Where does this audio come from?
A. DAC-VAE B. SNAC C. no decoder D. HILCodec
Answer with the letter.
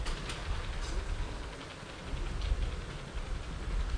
C